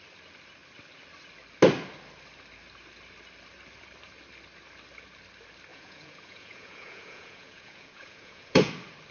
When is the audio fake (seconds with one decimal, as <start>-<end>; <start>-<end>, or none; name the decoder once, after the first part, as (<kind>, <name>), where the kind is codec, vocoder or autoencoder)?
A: 5.7-8.7 (vocoder, Vocos)